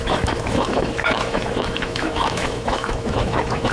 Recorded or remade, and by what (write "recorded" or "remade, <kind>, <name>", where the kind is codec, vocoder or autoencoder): remade, autoencoder, DAC-VAE